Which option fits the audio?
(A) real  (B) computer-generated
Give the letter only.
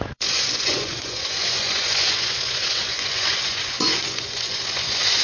B